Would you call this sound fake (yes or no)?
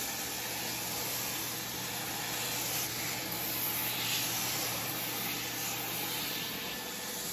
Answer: no